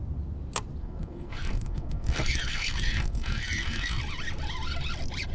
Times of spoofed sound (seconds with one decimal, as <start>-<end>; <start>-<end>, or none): 0.8-4.0